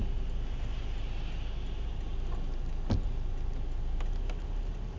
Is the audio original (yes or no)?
yes